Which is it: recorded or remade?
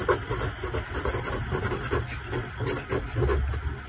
recorded